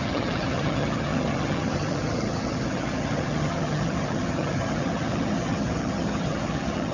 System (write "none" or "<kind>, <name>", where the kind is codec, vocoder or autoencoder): vocoder, HiFi-GAN